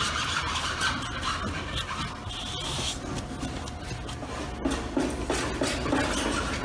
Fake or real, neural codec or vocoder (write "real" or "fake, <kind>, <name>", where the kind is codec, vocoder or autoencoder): real